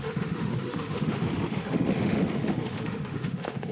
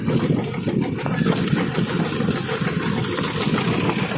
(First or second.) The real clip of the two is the second